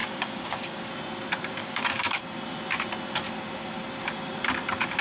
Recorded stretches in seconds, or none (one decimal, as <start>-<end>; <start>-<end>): 0.9-1.6; 2.2-5.0